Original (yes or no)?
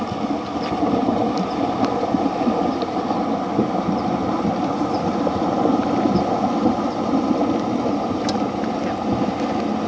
yes